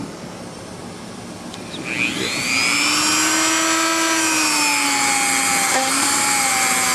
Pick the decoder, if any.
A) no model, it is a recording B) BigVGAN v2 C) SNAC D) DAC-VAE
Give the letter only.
A